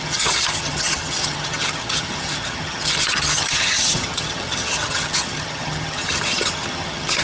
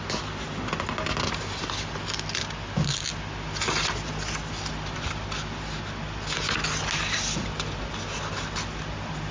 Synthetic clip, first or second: first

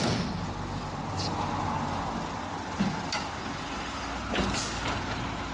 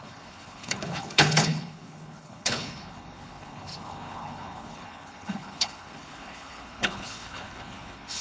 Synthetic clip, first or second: second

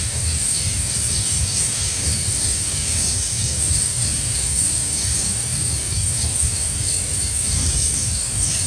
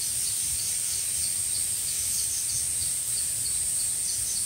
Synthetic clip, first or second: first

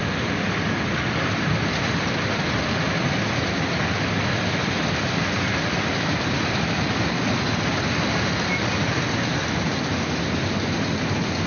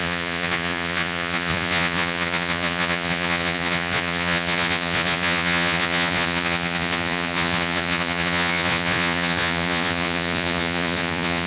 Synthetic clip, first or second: second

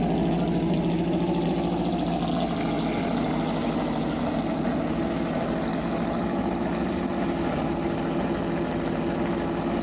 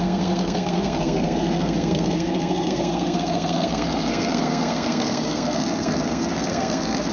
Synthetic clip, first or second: second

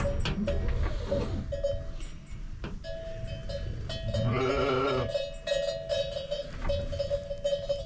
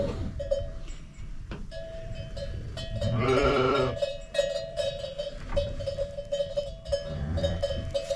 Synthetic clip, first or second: second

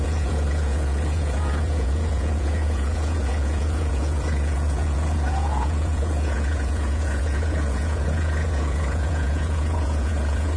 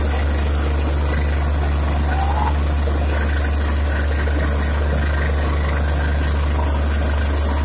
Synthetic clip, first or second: first